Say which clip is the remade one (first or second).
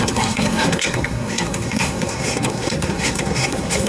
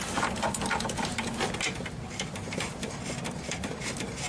first